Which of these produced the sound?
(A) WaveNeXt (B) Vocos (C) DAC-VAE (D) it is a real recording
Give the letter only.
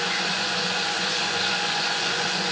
B